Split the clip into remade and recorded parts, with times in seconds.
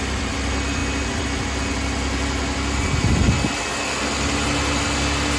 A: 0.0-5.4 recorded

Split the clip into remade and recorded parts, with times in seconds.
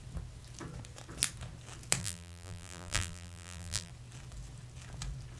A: 0.0-2.0 recorded; 2.0-3.9 remade; 3.9-5.4 recorded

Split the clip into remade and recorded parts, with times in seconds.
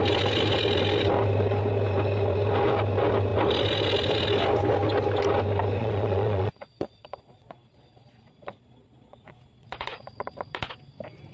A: 0.0-5.8 recorded; 5.8-10.3 remade; 10.3-11.3 recorded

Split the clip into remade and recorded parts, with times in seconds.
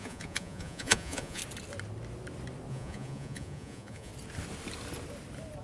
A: 0.0-1.4 remade; 1.4-2.7 recorded; 2.7-4.1 remade; 4.1-5.6 recorded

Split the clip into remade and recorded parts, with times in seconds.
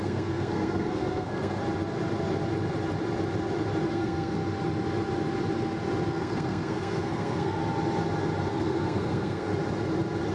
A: 0.0-1.6 remade; 1.6-3.9 recorded; 3.9-4.4 remade; 4.4-6.1 recorded; 6.1-7.6 remade; 7.6-8.5 recorded; 8.5-9.5 remade; 9.5-10.3 recorded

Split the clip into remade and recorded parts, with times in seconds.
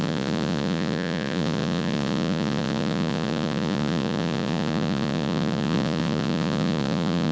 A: 0.0-7.3 remade